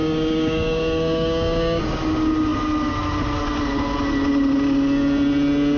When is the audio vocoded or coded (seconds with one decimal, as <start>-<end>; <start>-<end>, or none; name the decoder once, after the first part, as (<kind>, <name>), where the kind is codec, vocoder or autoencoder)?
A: 0.0-1.8 (codec, DAC)